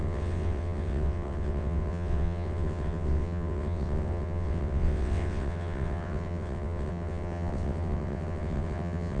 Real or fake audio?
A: fake